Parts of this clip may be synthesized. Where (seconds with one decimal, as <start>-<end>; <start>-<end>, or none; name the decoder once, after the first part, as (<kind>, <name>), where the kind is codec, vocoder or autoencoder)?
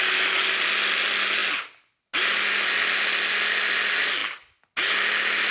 none